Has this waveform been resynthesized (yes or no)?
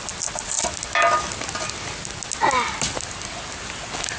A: no